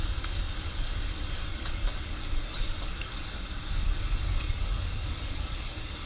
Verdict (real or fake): fake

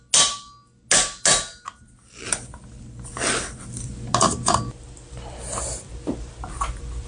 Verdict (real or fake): real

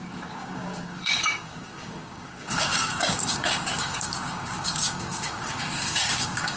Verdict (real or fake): fake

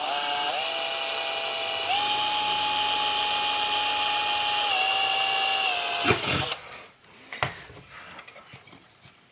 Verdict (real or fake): real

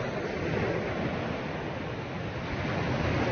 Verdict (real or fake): real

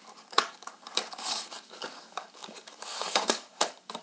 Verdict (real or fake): fake